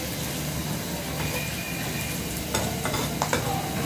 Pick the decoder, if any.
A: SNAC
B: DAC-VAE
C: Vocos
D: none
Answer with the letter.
D